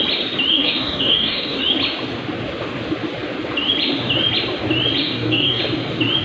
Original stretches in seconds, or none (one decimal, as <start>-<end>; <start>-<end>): 0.0-0.5; 1.6-5.0; 5.6-6.2